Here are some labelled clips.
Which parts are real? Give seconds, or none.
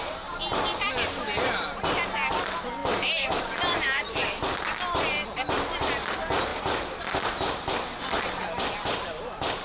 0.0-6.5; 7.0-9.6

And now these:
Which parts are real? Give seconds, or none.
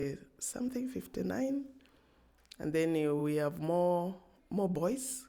0.0-5.3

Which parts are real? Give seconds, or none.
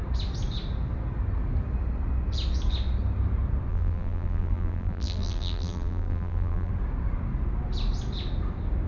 0.0-3.7; 6.7-8.9